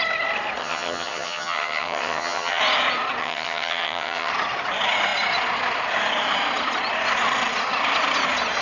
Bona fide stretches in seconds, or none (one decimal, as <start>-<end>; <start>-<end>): 0.0-0.6; 2.6-3.2; 4.3-8.6